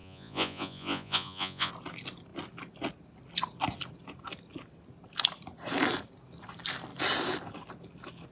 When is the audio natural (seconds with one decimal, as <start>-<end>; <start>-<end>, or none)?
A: 1.7-8.3